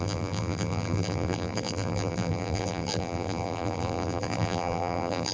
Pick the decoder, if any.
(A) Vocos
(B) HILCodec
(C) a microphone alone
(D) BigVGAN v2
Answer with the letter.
D